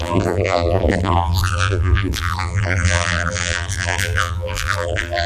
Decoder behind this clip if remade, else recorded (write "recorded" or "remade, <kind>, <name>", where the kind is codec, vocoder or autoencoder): remade, vocoder, BigVGAN v2